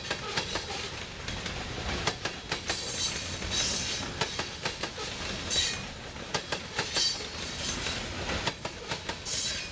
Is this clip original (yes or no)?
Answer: yes